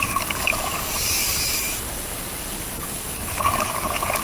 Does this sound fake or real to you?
fake